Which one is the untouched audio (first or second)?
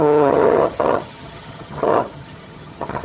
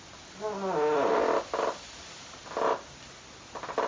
second